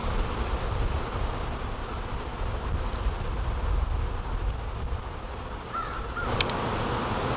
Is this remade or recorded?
recorded